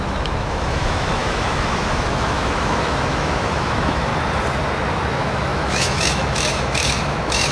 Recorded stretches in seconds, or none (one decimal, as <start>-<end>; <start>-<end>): 4.1-5.1